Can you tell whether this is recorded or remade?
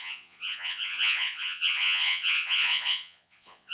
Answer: remade